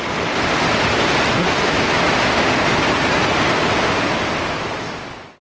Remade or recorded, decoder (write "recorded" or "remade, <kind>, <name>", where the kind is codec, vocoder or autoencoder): recorded